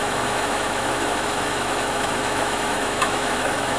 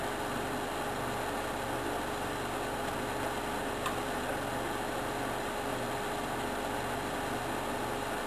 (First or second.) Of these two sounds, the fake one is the first